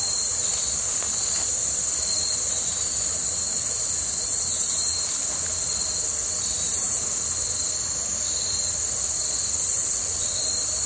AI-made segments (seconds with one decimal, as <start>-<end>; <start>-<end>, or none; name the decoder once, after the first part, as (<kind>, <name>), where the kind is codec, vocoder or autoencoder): 9.8-10.4 (vocoder, WaveNeXt)